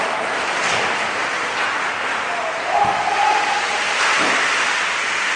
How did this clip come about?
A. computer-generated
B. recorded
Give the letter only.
B